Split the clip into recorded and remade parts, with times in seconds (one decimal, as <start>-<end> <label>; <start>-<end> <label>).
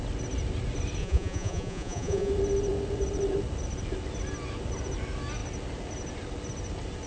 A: 0.0-1.0 recorded; 1.0-2.3 remade; 2.3-7.1 recorded